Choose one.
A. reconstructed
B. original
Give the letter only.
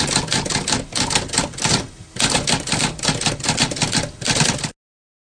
B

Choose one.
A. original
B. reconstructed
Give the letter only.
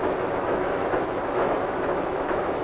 B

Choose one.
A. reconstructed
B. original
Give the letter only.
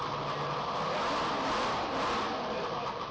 B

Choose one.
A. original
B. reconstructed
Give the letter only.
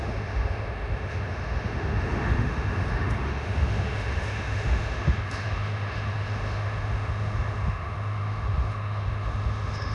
B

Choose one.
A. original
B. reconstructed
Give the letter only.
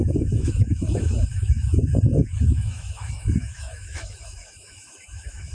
B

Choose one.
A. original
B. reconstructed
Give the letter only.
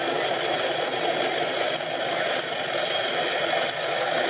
A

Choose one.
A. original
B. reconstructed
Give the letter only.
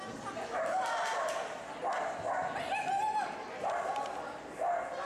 A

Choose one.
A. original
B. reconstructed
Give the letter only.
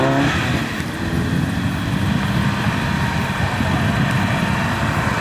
A